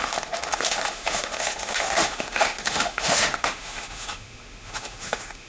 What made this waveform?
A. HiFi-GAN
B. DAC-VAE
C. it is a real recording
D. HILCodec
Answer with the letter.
B